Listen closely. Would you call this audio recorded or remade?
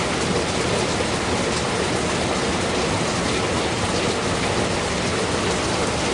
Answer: recorded